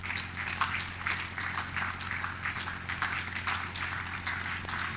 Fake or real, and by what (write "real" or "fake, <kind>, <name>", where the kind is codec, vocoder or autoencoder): real